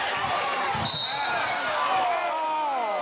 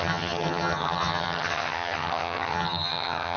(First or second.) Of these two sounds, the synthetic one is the second